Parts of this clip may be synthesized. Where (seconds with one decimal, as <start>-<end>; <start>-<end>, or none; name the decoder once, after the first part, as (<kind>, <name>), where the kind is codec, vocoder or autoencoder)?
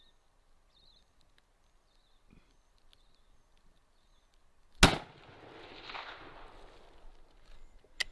none